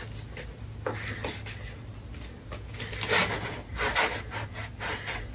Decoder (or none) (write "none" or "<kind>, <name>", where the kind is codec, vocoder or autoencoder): none